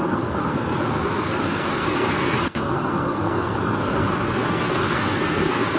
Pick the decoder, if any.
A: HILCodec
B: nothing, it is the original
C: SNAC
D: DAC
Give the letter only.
C